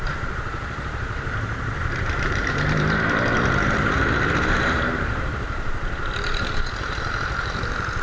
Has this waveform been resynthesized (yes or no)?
yes